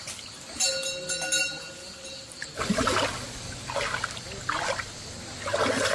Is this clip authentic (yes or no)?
yes